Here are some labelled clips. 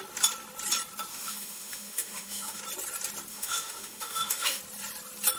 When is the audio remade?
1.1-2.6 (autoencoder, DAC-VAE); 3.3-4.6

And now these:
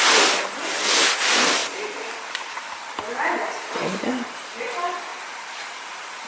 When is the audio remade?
none

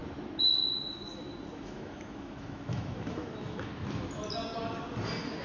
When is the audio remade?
1.5-3.7 (autoencoder, DAC-VAE)

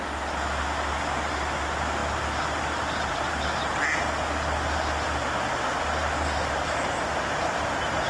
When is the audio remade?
none

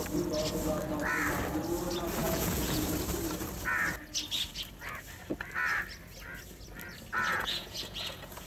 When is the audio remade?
2.2-2.8 (vocoder, Vocos); 7.3-8.5